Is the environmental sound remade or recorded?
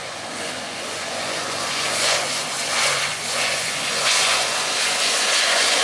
remade